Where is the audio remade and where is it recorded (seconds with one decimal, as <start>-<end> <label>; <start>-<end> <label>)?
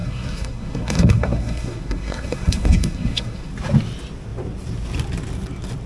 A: 0.0-3.5 remade; 3.5-5.9 recorded